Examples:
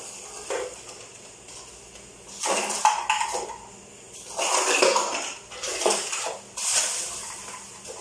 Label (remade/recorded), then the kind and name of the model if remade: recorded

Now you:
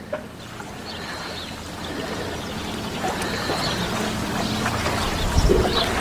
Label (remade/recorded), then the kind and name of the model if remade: recorded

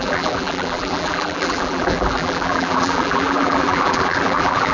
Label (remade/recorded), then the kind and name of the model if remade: remade, vocoder, BigVGAN v2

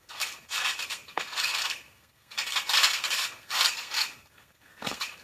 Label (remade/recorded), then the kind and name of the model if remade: remade, codec, SNAC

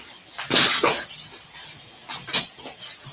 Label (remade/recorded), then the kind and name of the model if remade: recorded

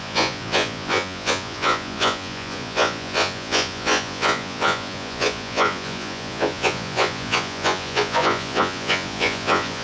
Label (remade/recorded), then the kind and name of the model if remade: remade, vocoder, Vocos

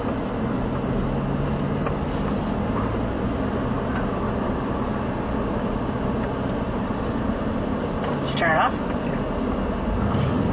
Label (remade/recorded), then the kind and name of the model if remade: recorded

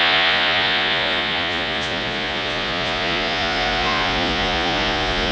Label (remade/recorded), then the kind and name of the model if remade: remade, vocoder, Vocos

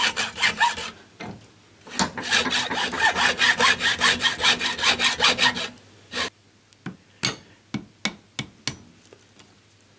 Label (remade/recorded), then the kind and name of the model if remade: recorded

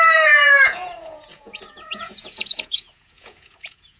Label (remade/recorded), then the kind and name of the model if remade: remade, vocoder, Vocos